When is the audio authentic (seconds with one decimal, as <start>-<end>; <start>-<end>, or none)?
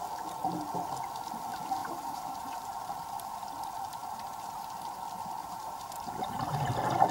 0.0-1.8; 2.9-4.0; 4.7-5.4; 6.6-7.1